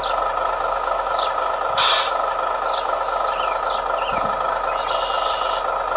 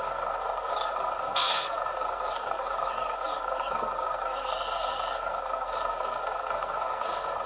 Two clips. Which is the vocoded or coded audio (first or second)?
second